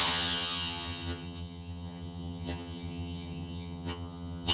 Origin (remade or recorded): remade